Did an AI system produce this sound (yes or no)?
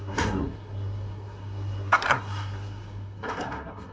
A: yes